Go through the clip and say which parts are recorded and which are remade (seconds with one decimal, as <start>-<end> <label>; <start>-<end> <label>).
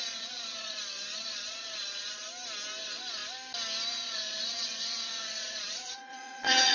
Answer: 0.0-2.3 remade; 2.3-2.8 recorded; 2.8-3.2 remade; 3.2-3.9 recorded; 3.9-6.7 remade